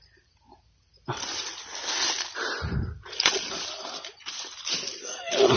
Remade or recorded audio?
recorded